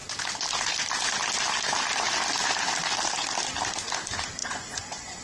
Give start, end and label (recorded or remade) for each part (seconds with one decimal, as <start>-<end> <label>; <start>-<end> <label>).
0.0-4.4 recorded; 4.4-5.2 remade